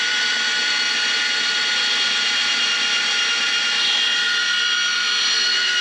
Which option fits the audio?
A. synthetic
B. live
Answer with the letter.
B